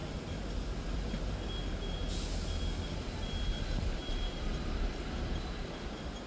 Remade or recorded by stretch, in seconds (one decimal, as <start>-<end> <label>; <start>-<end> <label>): 0.0-1.3 remade; 1.3-4.0 recorded; 4.0-5.7 remade; 5.7-6.3 recorded